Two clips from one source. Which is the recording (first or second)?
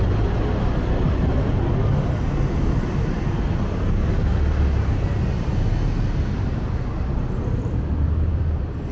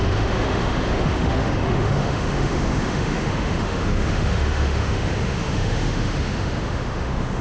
first